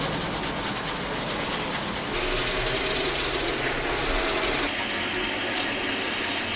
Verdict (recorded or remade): recorded